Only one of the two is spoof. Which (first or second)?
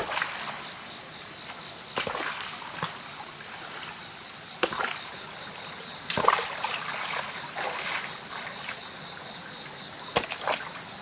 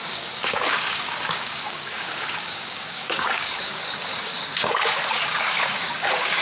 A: second